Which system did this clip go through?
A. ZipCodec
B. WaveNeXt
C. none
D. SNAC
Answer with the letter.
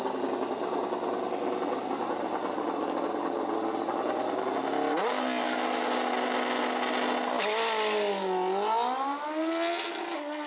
C